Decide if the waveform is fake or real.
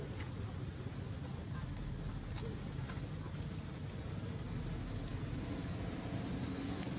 real